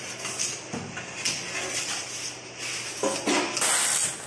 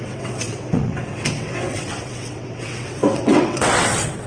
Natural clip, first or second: first